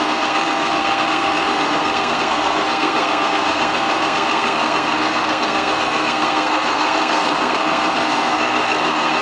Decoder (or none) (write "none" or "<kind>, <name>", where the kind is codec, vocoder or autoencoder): codec, SNAC